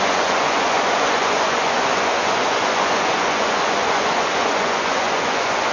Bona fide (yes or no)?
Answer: no